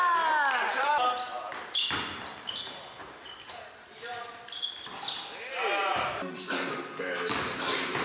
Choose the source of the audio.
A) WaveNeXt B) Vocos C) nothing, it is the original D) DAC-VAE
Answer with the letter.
C